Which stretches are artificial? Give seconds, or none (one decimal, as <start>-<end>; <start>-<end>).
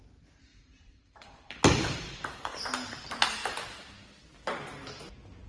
0.5-2.6